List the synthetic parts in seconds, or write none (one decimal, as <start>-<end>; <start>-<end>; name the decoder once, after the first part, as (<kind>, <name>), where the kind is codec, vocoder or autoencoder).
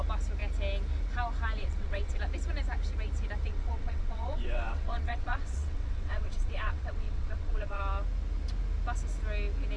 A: 1.6-2.2 (vocoder, WaveNeXt); 3.5-7.8